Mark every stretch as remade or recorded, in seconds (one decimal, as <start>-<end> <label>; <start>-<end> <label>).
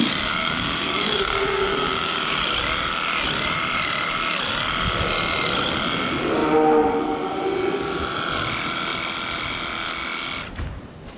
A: 0.0-0.4 recorded; 0.4-2.4 remade; 2.4-11.2 recorded